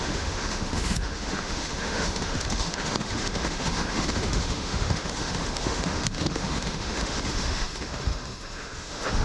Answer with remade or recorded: remade